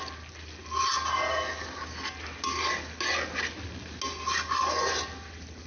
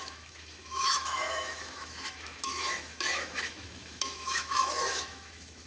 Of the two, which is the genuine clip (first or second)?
first